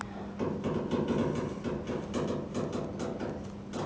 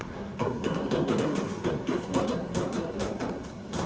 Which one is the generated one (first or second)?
second